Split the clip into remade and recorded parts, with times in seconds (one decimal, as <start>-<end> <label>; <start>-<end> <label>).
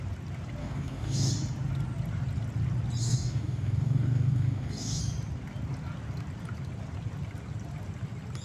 0.0-0.6 recorded; 0.6-1.3 remade; 1.3-3.0 recorded; 3.0-5.0 remade; 5.0-8.4 recorded